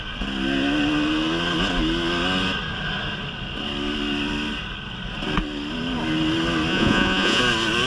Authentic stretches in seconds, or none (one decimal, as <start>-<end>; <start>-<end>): 0.0-6.7; 7.4-7.9